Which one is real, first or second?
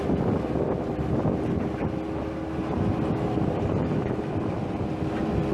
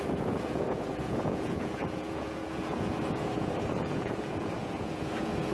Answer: first